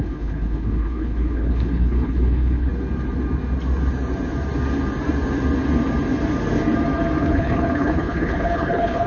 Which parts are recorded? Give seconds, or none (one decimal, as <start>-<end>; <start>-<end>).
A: 2.7-7.2